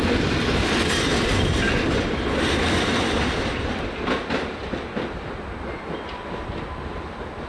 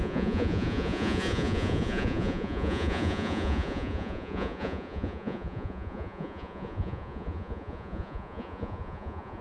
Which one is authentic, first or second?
first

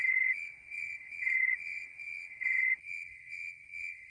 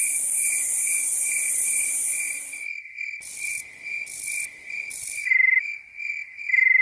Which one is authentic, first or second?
second